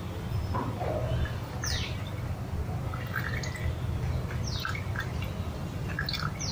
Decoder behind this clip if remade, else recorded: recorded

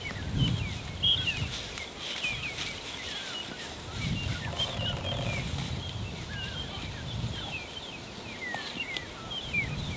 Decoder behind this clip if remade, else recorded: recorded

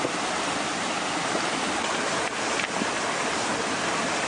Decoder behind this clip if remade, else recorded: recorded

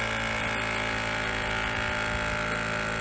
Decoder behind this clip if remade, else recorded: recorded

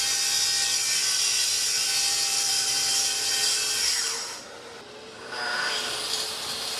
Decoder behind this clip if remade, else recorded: remade, vocoder, BigVGAN v2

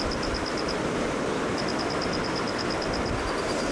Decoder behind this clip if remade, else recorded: recorded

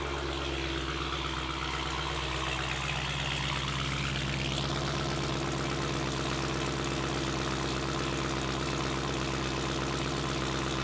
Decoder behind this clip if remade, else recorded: recorded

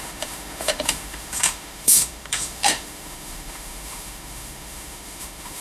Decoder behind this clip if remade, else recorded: remade, autoencoder, DAC-VAE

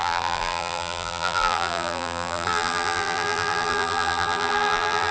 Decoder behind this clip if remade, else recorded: remade, vocoder, BigVGAN v2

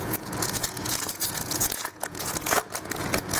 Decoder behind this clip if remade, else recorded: remade, vocoder, Vocos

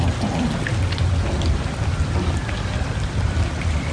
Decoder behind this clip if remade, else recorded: recorded